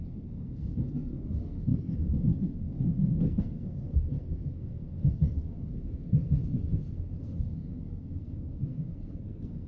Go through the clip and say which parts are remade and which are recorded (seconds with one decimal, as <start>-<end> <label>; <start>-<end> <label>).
0.0-9.7 remade